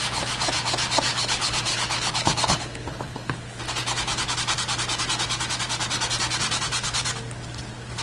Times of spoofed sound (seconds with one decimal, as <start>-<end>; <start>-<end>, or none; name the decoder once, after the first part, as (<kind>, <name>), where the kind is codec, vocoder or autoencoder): 1.1-3.6 (codec, HILCodec)